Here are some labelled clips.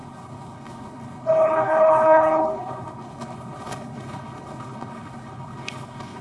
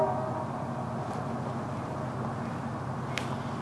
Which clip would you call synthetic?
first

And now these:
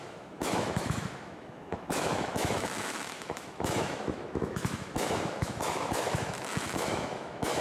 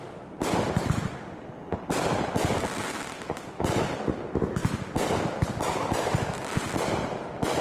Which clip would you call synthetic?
first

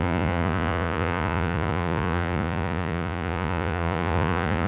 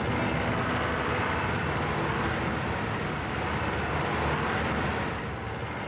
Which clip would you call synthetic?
first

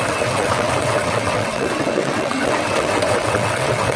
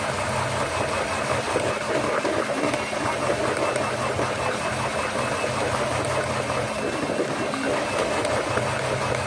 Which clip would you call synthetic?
first